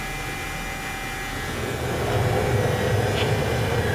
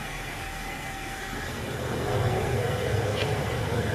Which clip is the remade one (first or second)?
second